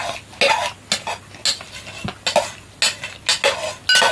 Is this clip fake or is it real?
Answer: real